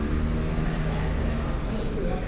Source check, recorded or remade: recorded